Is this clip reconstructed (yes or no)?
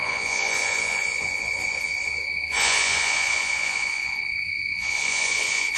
yes